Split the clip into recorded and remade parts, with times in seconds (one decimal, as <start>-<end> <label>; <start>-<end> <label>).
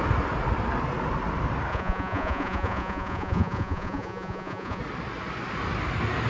0.0-1.7 recorded; 1.7-4.8 remade; 4.8-6.3 recorded